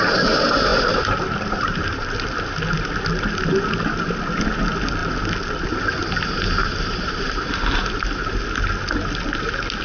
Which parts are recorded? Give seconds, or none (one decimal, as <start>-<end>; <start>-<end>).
0.0-0.7; 2.2-6.6; 8.0-9.8